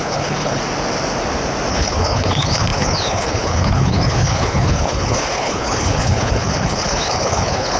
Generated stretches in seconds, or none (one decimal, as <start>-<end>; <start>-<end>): 0.0-0.6; 1.7-7.8

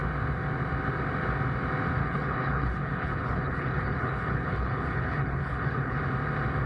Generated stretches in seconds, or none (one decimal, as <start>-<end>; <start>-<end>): 2.0-6.0

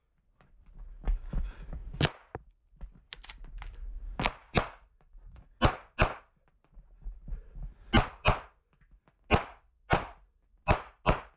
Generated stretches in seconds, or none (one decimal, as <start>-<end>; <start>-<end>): none

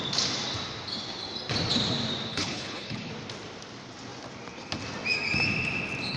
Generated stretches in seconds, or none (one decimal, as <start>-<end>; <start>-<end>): 2.3-3.1

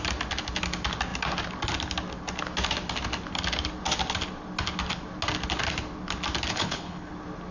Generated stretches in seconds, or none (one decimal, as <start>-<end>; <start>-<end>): 6.5-7.1

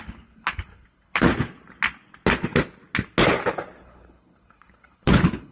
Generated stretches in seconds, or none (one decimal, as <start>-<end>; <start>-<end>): 0.0-1.3; 3.8-5.5

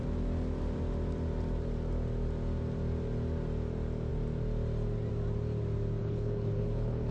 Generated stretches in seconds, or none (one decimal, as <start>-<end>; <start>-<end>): 6.0-7.1

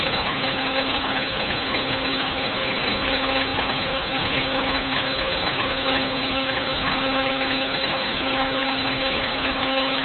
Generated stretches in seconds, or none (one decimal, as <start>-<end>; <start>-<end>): 0.0-10.0